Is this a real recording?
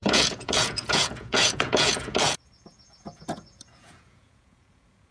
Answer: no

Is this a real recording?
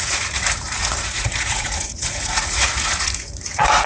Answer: no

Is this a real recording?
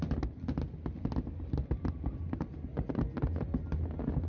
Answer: yes